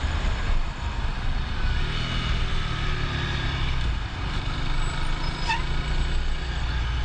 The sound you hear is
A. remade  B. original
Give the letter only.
B